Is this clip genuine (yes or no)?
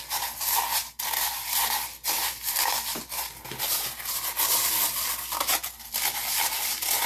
yes